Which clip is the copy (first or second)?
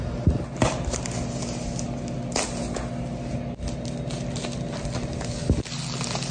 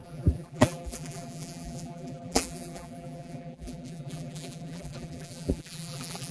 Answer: second